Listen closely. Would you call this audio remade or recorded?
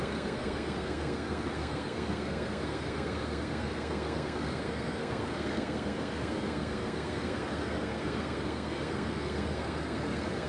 remade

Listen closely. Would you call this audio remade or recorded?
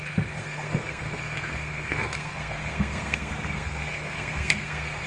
remade